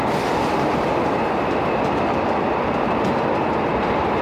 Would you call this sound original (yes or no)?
no